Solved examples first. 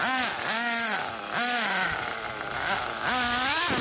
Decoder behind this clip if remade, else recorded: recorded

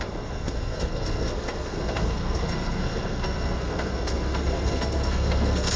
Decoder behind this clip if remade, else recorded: remade, codec, SNAC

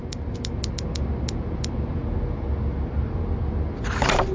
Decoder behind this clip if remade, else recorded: recorded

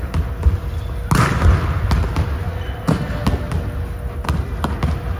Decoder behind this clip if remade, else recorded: recorded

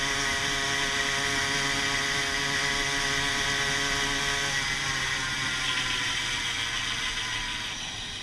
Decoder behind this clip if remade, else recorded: recorded